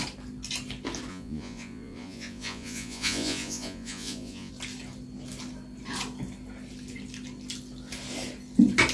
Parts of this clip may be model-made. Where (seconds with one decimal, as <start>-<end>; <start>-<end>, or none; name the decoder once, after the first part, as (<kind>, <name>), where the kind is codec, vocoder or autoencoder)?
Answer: 1.1-4.5 (vocoder, Vocos)